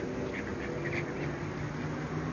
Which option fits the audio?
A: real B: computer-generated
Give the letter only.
A